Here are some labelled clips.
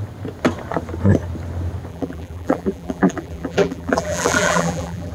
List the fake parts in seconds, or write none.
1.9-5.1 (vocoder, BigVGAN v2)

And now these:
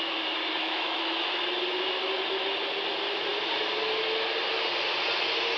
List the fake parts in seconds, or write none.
0.6-1.4 (autoencoder, DAC-VAE)

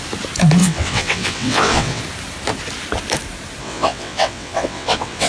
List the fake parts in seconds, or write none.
0.6-2.0 (vocoder, WaveNeXt); 3.6-5.3

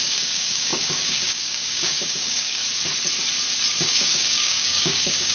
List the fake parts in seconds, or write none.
0.0-2.6 (codec, DAC); 3.7-5.3

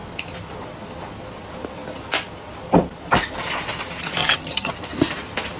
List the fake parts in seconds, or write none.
4.2-4.7 (vocoder, HiFi-GAN)